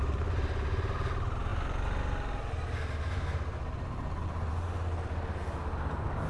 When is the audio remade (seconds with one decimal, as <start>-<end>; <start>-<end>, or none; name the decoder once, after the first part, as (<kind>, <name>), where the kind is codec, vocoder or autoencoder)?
none